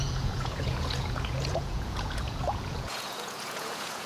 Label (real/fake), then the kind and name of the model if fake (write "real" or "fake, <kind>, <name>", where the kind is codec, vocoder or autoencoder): fake, vocoder, Vocos